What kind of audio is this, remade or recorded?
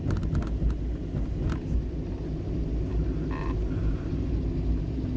recorded